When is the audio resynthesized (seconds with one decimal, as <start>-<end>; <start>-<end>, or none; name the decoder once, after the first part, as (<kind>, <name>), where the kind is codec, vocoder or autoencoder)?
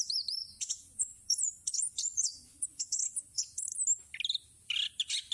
0.4-3.6 (vocoder, Vocos)